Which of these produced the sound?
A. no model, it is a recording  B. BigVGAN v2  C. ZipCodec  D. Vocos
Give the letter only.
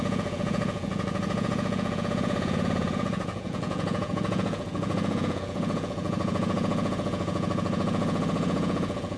D